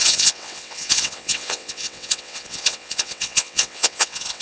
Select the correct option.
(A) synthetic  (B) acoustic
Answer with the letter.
A